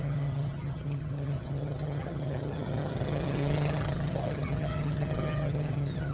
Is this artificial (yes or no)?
yes